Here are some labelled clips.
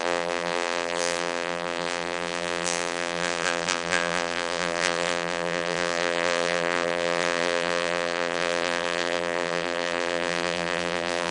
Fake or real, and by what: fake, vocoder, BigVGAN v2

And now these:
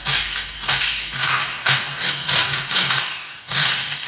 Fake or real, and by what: fake, codec, DAC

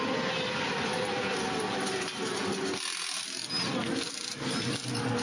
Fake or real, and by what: real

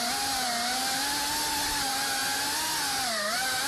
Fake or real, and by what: real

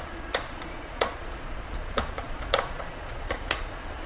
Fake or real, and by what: fake, vocoder, Vocos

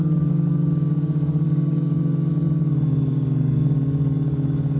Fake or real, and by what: fake, codec, DAC